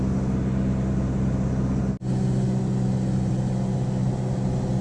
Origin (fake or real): real